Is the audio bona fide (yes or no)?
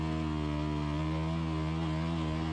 yes